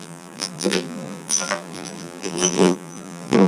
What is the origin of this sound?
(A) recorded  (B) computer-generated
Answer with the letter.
B